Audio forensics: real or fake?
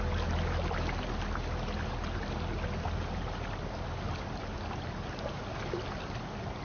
real